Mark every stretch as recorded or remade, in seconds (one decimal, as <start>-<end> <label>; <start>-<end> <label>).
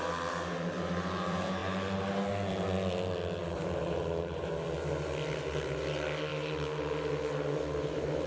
0.0-3.4 recorded; 3.4-4.5 remade; 4.5-8.3 recorded